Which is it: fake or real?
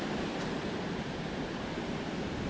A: fake